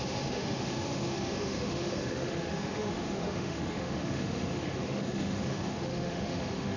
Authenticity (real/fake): fake